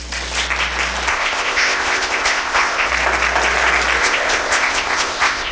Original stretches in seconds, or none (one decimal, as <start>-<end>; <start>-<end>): 0.0-1.1; 2.9-4.0